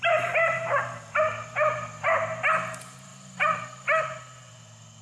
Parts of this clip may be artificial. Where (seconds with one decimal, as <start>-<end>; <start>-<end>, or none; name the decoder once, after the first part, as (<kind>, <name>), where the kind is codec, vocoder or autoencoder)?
none